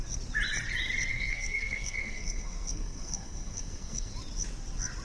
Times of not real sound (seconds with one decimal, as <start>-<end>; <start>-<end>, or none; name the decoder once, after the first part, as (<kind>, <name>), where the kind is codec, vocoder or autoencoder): 1.1-4.1 (codec, SNAC)